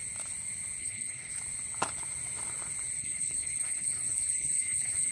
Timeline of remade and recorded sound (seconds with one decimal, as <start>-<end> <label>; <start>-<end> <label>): 0.0-0.8 recorded; 0.8-1.3 remade; 1.3-3.0 recorded; 3.0-5.1 remade